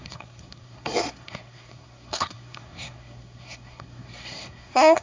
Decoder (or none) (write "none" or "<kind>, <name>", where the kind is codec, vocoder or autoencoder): codec, SNAC